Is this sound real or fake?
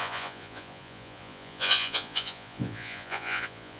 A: fake